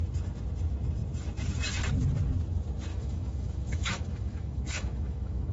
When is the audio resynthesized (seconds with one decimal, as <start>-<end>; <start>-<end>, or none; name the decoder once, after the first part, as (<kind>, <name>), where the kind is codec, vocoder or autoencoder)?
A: 2.9-5.5 (autoencoder, DAC-VAE)